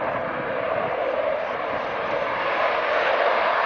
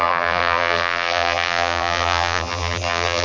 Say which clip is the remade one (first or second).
second